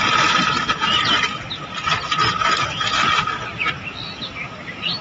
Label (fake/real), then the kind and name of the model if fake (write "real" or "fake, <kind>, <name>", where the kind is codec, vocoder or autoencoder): real